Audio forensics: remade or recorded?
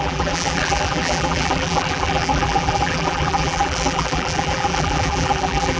remade